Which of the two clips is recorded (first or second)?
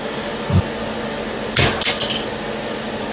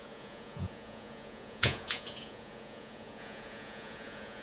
first